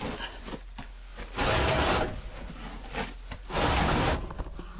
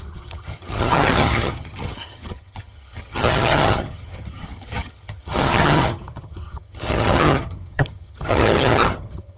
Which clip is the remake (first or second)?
second